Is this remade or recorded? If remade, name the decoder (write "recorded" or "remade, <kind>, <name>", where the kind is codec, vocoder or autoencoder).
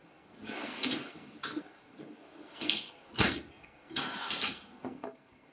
remade, codec, SNAC